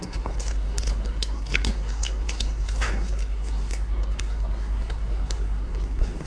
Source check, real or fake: fake